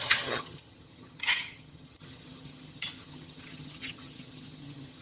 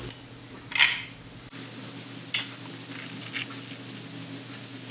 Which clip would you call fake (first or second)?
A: first